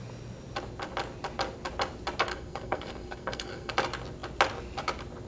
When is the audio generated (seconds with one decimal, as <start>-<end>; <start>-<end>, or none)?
2.3-3.7